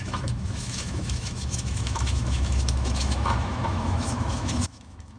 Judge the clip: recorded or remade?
remade